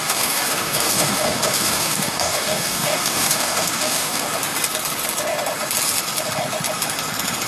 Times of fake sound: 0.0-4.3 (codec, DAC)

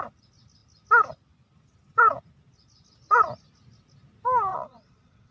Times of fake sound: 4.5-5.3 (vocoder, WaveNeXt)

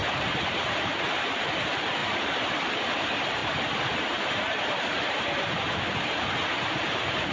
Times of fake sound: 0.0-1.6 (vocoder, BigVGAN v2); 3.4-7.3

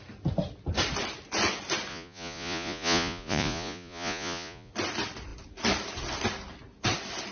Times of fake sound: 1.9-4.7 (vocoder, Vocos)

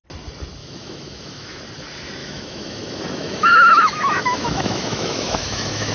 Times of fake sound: 0.6-1.6 (autoencoder, DAC-VAE); 2.2-5.9

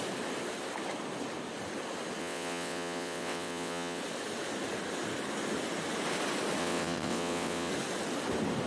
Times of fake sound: 2.2-4.0 (vocoder, WaveNeXt); 6.6-7.7